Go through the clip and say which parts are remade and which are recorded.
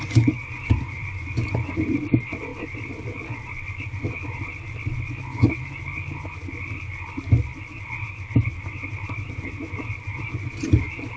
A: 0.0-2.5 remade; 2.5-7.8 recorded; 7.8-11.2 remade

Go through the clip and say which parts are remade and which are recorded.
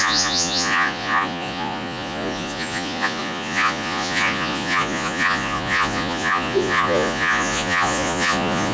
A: 0.0-8.7 remade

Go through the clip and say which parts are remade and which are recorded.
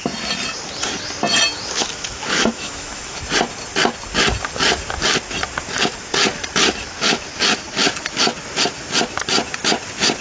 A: 0.0-1.8 recorded; 1.8-3.2 remade; 3.2-10.2 recorded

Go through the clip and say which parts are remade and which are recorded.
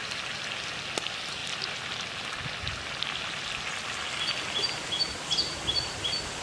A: 0.0-6.4 recorded